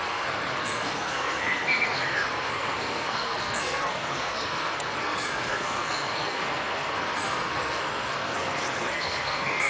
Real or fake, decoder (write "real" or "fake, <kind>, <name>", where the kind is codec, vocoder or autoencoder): fake, codec, SNAC